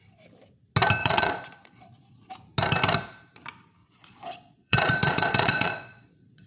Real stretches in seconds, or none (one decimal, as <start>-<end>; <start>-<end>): 0.0-1.0; 2.3-3.8